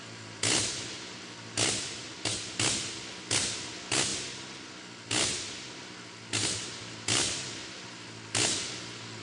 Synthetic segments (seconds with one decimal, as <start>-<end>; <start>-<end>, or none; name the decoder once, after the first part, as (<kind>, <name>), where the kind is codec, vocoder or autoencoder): none